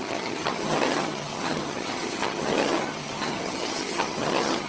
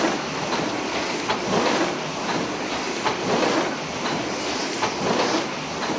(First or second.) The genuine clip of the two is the second